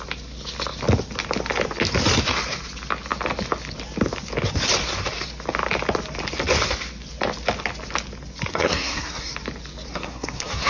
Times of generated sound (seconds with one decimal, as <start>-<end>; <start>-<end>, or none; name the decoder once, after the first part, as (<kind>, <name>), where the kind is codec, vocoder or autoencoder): 8.5-9.3 (codec, SNAC); 9.9-10.7